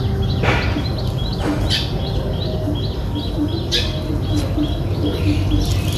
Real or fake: real